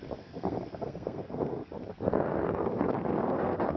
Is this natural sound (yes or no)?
no